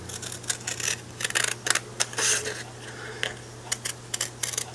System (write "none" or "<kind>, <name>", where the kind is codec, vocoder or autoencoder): none